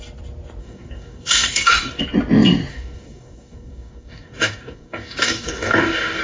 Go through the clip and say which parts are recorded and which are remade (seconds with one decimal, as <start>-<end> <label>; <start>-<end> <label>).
0.0-0.6 recorded; 0.6-2.0 remade; 2.0-2.7 recorded; 2.7-6.2 remade